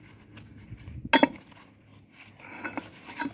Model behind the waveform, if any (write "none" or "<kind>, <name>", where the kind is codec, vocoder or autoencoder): none